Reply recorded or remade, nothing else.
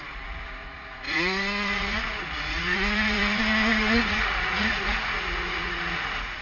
remade